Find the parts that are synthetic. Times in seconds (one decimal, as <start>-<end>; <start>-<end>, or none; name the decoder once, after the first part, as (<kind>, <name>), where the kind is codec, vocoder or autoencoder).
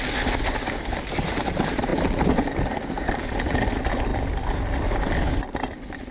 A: none